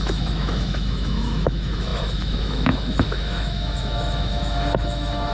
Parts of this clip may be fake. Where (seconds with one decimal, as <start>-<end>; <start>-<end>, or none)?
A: 0.0-5.3